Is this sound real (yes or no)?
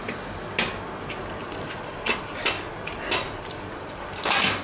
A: yes